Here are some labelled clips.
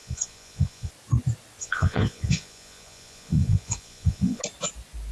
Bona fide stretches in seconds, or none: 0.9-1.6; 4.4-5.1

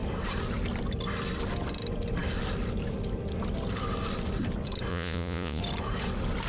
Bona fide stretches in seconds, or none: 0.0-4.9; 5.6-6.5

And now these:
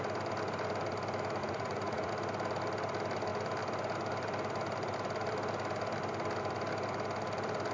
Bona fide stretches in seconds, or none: 0.0-1.4; 2.1-7.7

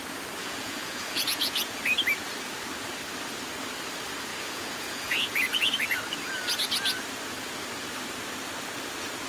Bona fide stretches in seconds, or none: 0.0-0.4; 1.8-4.3; 5.8-9.3

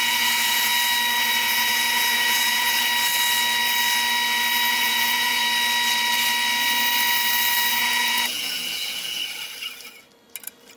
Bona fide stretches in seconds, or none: 0.7-1.2; 2.9-4.7; 5.4-7.7; 9.2-10.8

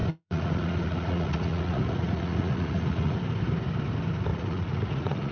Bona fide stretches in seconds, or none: 3.2-4.3